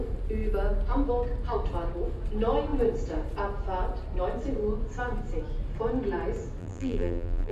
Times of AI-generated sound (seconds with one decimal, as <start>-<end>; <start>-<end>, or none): 6.6-7.5